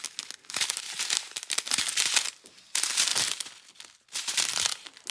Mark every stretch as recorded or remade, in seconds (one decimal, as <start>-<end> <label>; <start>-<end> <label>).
0.0-5.1 recorded